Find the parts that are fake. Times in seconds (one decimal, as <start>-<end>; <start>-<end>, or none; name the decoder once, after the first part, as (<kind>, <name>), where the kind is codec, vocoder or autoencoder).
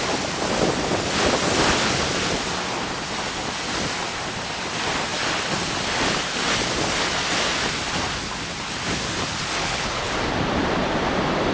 9.6-10.1 (codec, HILCodec)